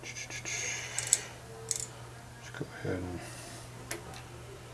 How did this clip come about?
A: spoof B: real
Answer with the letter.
B